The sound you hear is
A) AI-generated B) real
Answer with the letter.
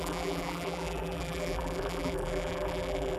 A